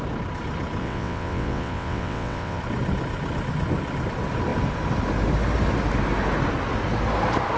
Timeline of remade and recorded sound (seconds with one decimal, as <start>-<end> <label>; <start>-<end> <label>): 0.0-0.8 recorded; 0.8-2.6 remade; 2.6-7.6 recorded